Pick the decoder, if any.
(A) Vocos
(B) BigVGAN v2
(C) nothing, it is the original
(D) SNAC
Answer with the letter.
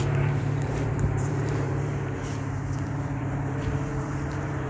B